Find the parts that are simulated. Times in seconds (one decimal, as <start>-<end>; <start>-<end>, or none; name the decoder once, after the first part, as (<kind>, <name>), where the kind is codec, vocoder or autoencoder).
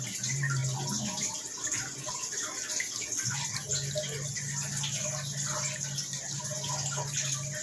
none